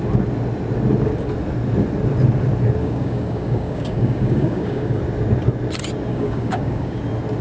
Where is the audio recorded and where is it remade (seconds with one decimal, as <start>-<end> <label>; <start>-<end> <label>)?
0.0-2.8 recorded; 2.8-5.0 remade; 5.0-6.1 recorded; 6.1-7.0 remade; 7.0-7.4 recorded